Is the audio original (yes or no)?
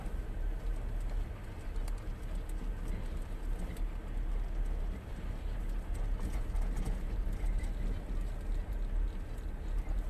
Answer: yes